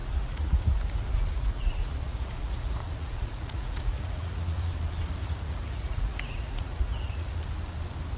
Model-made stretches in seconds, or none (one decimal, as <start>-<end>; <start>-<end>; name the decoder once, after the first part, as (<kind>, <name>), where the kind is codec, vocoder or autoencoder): 0.0-4.7 (vocoder, Vocos); 5.2-7.3